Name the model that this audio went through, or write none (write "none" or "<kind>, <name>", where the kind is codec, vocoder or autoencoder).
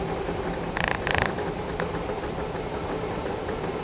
vocoder, BigVGAN v2